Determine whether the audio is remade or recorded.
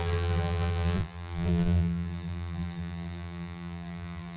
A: remade